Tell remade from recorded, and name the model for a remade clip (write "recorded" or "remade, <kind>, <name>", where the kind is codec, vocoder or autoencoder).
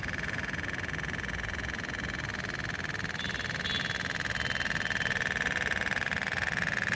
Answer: remade, vocoder, Vocos